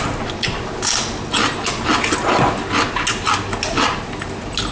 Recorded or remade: recorded